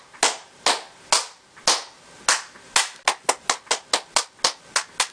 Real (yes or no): yes